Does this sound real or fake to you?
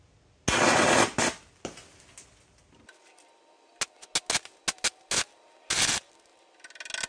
real